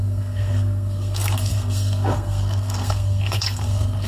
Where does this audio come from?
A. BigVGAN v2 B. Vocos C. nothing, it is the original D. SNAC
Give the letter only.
D